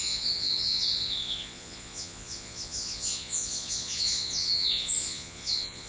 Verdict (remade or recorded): remade